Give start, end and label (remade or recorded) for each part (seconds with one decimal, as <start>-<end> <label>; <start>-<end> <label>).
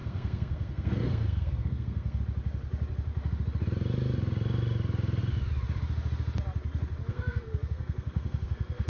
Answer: 0.0-2.2 remade; 2.2-7.1 recorded; 7.1-8.9 remade